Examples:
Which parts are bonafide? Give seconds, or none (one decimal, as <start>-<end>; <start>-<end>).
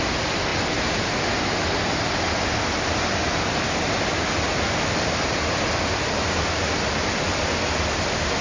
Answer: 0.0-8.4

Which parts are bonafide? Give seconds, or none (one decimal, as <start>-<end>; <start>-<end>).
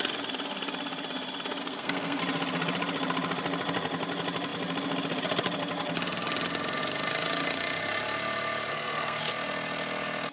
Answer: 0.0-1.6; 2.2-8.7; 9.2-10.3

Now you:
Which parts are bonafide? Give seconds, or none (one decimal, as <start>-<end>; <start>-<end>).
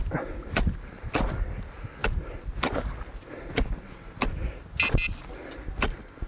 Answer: 0.0-6.3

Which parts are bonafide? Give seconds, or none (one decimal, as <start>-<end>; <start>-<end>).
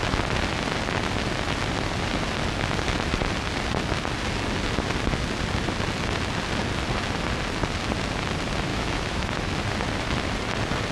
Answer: 0.0-8.7; 9.3-10.9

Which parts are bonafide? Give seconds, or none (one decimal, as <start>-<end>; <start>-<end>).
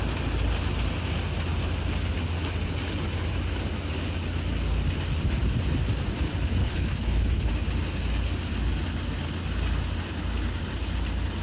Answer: 0.0-6.6; 7.5-11.4